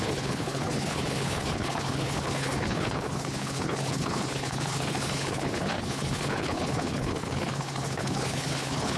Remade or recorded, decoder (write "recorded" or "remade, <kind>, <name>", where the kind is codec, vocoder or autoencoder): remade, codec, HILCodec